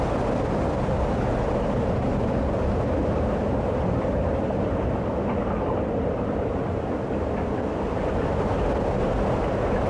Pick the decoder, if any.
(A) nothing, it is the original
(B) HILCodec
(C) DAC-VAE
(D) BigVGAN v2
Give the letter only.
A